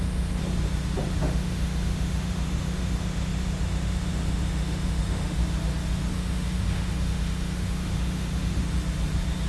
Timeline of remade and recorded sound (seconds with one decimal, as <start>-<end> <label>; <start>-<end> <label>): 0.0-0.4 remade; 0.4-1.2 recorded; 1.2-5.4 remade; 5.4-6.1 recorded; 6.1-8.6 remade; 8.6-9.5 recorded